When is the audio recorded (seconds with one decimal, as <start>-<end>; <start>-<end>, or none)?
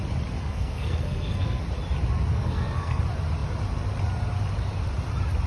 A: 0.0-0.4; 1.6-2.3; 3.0-5.5